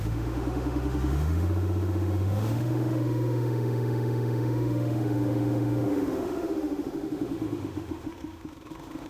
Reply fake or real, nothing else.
fake